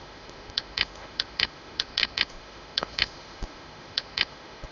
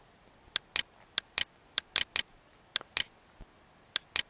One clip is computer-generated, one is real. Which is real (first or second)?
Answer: second